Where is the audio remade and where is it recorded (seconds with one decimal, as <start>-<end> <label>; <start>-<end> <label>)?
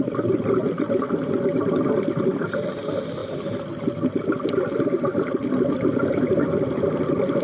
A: 0.0-7.4 recorded